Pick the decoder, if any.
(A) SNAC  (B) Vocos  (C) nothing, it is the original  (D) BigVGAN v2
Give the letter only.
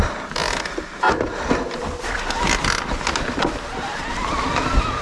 C